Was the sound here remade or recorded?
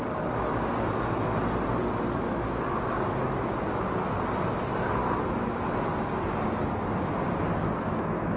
recorded